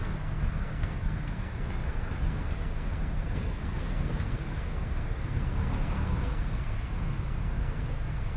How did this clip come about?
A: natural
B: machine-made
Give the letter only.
B